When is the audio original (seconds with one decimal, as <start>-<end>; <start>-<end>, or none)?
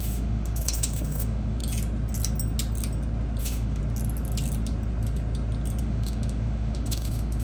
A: 1.6-3.4; 3.8-5.8